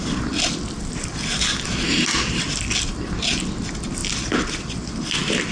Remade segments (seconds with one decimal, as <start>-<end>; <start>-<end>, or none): none